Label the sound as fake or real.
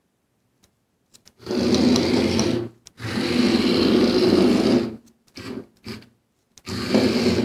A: real